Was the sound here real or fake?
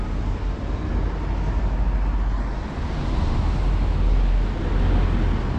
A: real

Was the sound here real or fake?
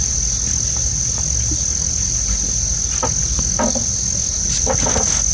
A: real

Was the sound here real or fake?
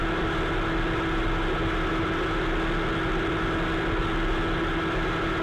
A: real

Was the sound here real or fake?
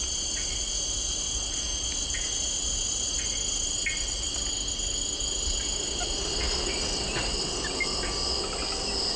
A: real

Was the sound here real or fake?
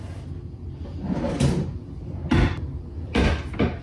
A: real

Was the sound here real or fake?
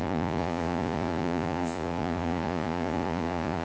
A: fake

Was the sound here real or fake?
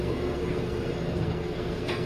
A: fake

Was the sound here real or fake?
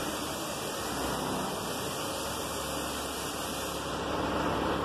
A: real